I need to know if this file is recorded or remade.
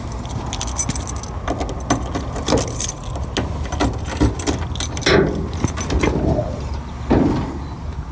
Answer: recorded